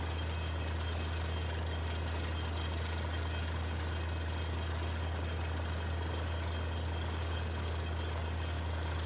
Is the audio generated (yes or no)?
no